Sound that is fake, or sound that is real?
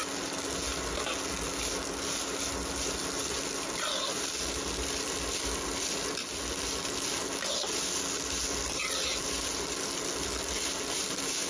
real